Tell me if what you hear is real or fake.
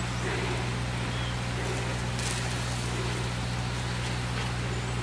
real